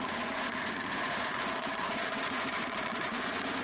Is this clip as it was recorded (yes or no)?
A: no